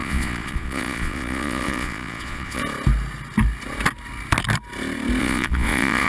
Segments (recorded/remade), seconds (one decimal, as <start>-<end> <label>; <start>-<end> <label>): 0.0-2.6 remade; 2.6-5.2 recorded; 5.2-6.1 remade